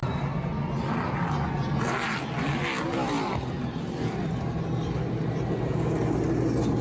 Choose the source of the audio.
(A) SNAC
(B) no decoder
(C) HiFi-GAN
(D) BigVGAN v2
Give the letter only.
B